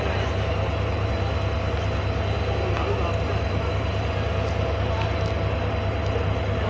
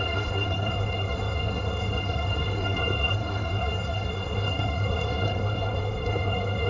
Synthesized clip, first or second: second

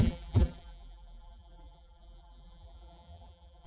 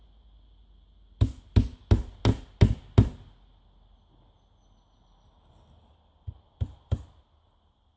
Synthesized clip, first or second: first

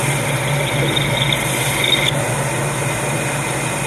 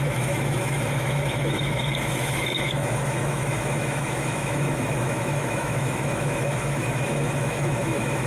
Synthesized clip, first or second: second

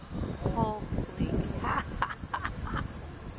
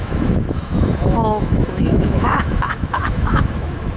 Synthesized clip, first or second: second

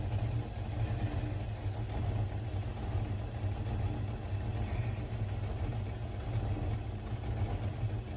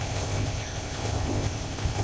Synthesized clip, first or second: second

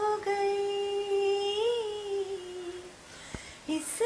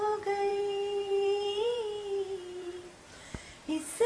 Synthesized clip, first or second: second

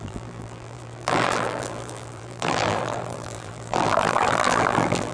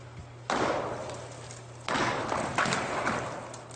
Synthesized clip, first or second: first